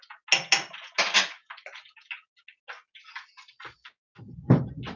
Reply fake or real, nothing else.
real